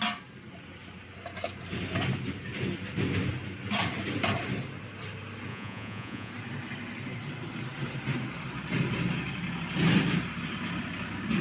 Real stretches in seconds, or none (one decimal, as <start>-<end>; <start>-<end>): 0.0-5.5; 6.3-11.4